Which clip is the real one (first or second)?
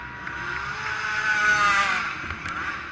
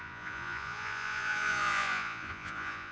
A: first